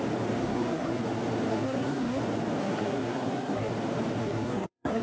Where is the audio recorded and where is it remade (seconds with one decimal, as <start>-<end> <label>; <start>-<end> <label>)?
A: 0.0-0.4 recorded; 0.4-1.0 remade; 1.0-1.5 recorded; 1.5-2.2 remade; 2.2-2.6 recorded; 2.6-3.7 remade; 3.7-4.2 recorded; 4.2-5.0 remade